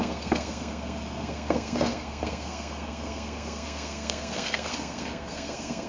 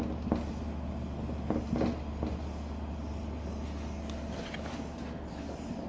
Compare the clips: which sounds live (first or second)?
second